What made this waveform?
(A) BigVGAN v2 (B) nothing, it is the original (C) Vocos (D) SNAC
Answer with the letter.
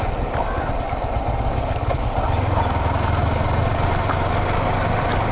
B